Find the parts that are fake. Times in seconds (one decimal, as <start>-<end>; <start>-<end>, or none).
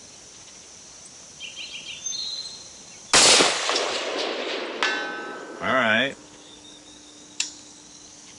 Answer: 5.3-8.4